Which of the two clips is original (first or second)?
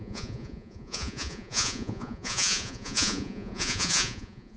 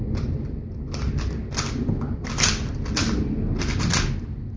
second